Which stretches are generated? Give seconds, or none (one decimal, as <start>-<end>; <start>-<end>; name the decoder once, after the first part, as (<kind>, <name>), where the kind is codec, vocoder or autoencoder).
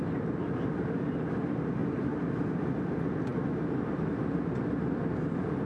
1.8-2.3 (vocoder, BigVGAN v2)